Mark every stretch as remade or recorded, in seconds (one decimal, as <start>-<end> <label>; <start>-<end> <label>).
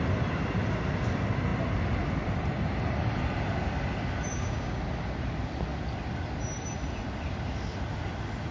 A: 0.0-4.3 recorded; 4.3-4.8 remade; 4.8-8.5 recorded